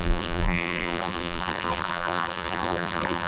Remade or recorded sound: remade